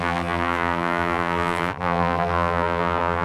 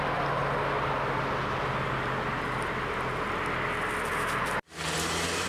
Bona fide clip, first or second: second